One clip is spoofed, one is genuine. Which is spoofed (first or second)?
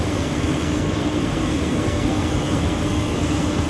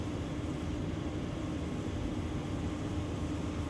first